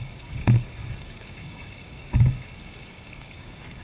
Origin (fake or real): fake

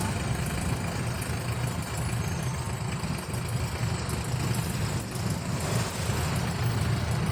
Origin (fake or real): real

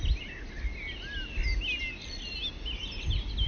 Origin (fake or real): real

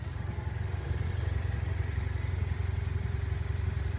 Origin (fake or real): real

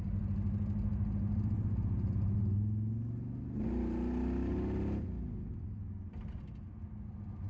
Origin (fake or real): real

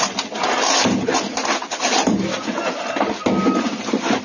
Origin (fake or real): real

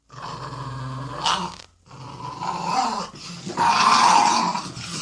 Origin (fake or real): real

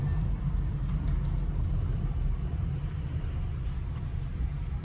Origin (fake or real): real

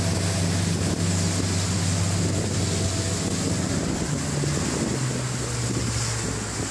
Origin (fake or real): real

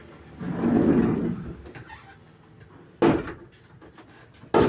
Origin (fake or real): real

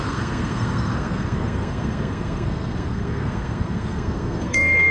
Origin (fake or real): fake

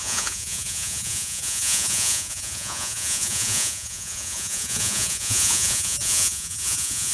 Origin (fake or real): fake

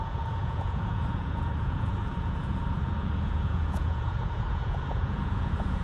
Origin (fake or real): fake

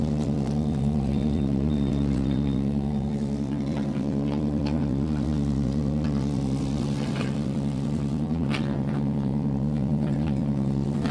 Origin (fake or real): fake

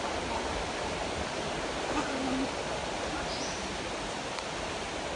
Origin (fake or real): real